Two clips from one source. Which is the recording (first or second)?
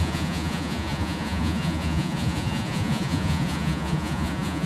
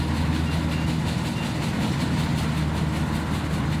second